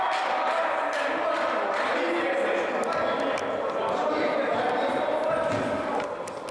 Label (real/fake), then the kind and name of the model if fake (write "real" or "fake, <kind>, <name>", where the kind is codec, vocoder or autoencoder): real